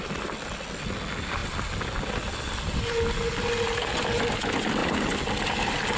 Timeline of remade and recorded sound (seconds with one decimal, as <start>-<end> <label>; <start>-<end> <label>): 0.0-6.0 recorded

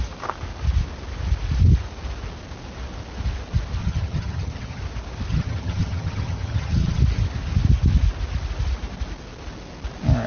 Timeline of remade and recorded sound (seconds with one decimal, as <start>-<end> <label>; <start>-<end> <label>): 0.0-3.8 recorded; 3.8-4.8 remade; 4.8-5.3 recorded; 5.3-7.0 remade; 7.0-10.3 recorded

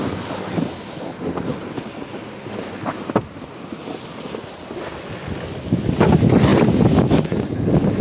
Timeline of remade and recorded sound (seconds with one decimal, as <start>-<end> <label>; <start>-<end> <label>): 0.0-8.0 recorded

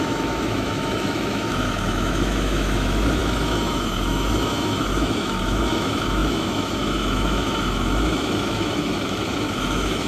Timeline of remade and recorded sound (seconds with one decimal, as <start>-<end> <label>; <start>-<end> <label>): 0.0-10.1 remade

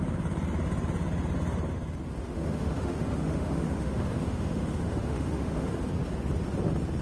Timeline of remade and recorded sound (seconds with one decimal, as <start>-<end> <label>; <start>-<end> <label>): 0.0-2.2 recorded; 2.2-5.8 remade; 5.8-7.0 recorded

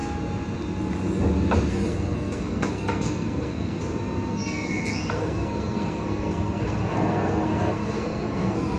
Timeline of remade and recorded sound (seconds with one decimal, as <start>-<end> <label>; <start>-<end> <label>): 0.0-1.7 recorded; 1.7-3.8 remade; 3.8-4.3 recorded; 4.3-8.8 remade

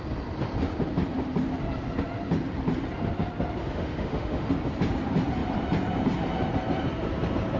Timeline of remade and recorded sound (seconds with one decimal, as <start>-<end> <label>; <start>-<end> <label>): 0.0-3.6 recorded; 3.6-4.5 remade; 4.5-7.6 recorded

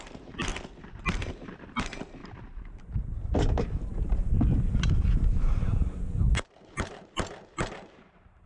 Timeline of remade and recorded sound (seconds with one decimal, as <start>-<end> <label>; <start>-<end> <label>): 0.0-0.5 remade; 0.5-1.3 recorded; 1.3-2.2 remade; 2.2-5.4 recorded; 5.4-8.5 remade